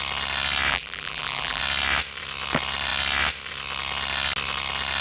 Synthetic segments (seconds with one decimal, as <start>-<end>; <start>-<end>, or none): 0.7-1.6